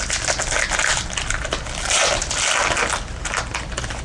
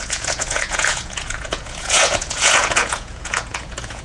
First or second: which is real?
first